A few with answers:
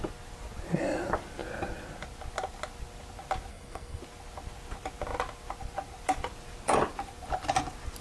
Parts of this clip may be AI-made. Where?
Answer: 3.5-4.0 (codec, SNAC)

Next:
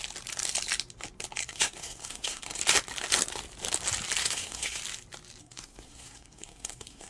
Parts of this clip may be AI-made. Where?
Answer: 1.4-2.6 (codec, SNAC); 4.2-4.8; 5.4-7.1